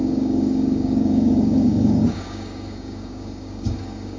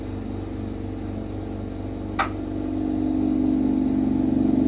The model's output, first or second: first